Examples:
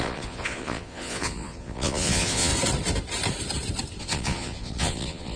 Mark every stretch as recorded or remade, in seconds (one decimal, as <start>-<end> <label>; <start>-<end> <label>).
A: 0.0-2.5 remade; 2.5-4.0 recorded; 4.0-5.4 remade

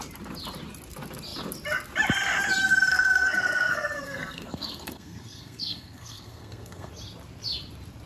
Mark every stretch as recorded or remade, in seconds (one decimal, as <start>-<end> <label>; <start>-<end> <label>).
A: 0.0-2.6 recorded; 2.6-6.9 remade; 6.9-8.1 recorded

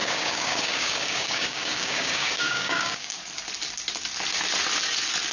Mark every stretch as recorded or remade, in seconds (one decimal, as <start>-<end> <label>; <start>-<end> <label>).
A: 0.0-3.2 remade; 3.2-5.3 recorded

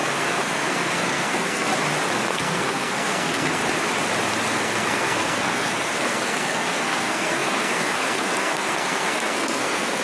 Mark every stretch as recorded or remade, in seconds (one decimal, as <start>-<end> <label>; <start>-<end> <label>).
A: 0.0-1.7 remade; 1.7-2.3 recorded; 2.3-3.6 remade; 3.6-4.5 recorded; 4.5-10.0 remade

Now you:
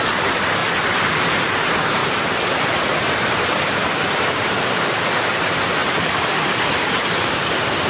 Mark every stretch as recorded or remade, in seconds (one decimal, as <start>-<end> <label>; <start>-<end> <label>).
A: 0.0-2.0 remade; 2.0-4.1 recorded; 4.1-5.8 remade; 5.8-7.9 recorded

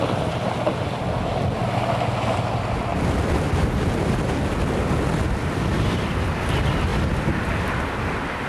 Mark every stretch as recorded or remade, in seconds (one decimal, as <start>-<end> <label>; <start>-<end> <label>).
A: 0.0-2.9 recorded; 2.9-4.2 remade; 4.2-8.5 recorded

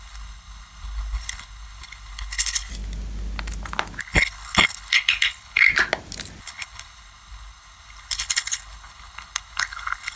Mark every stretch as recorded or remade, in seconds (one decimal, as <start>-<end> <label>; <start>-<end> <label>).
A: 0.0-2.7 remade; 2.7-4.0 recorded; 4.0-5.7 remade; 5.7-6.4 recorded; 6.4-10.2 remade

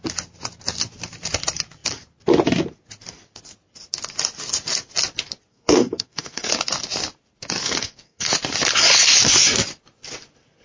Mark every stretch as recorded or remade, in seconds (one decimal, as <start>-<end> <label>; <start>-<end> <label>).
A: 0.0-5.5 recorded; 5.5-6.5 remade; 6.5-7.6 recorded; 7.6-8.3 remade; 8.3-10.6 recorded